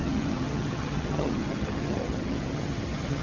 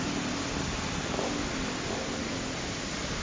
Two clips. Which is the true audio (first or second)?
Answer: second